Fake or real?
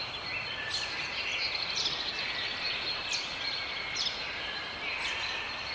real